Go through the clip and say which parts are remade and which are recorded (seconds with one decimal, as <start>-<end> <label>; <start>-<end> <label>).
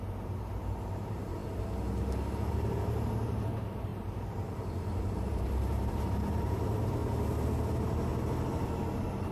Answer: 0.0-1.4 remade; 1.4-2.5 recorded; 2.5-7.0 remade; 7.0-7.6 recorded; 7.6-8.1 remade; 8.1-9.3 recorded